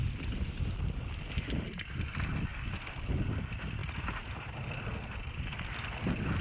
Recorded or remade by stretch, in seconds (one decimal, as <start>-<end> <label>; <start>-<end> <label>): 0.0-6.4 recorded